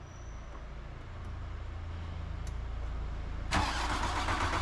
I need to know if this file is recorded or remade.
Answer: recorded